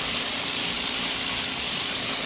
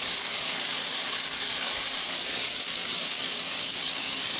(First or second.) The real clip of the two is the first